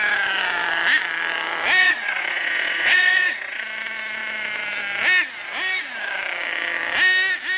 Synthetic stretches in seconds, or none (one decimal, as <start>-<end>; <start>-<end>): 1.8-3.6